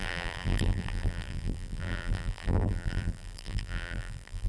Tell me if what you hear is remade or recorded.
remade